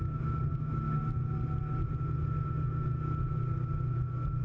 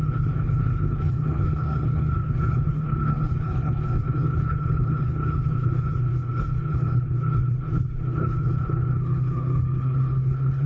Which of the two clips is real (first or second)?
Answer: first